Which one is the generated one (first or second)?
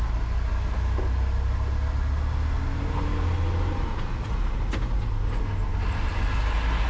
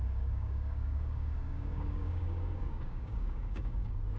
second